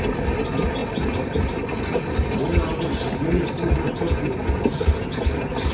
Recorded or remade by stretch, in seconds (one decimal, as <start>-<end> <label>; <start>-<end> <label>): 0.0-5.7 recorded